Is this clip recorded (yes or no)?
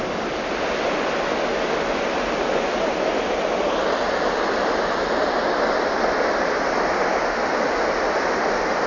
yes